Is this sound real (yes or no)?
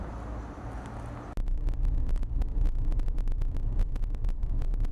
yes